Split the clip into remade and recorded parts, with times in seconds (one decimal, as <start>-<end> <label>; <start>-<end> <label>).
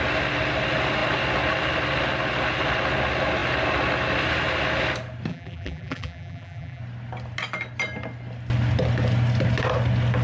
0.0-5.3 recorded; 5.3-6.8 remade; 6.8-10.2 recorded